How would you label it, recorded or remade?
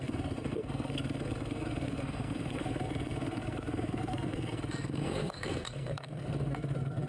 remade